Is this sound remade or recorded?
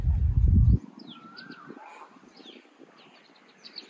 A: recorded